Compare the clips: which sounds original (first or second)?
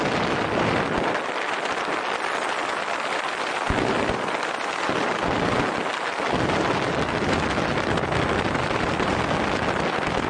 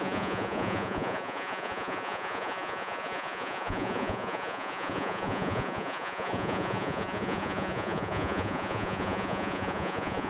first